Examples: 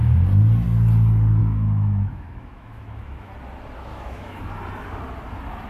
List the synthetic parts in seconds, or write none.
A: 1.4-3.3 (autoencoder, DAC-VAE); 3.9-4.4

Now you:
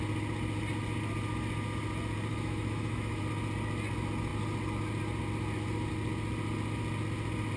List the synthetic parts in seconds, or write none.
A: 2.3-3.2 (autoencoder, DAC-VAE)

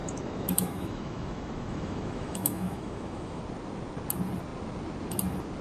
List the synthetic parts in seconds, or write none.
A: 0.0-3.4 (autoencoder, DAC-VAE)

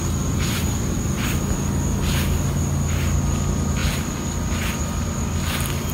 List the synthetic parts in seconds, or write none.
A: none

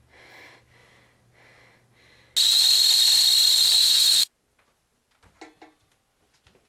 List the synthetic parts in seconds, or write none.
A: 3.8-4.3 (autoencoder, DAC-VAE)

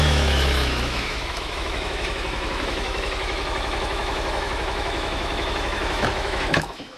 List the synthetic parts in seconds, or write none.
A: 0.0-7.0 (autoencoder, DAC-VAE)

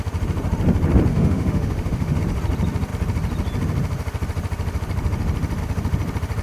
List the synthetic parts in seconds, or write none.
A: 1.1-2.2 (autoencoder, DAC-VAE)

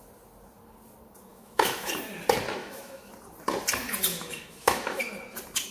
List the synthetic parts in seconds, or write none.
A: 1.3-1.9 (autoencoder, DAC-VAE); 2.6-3.1; 4.1-5.0